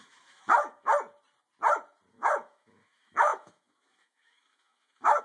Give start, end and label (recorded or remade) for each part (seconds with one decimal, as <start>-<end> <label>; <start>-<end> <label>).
0.0-0.9 remade; 0.9-2.1 recorded; 2.1-5.2 remade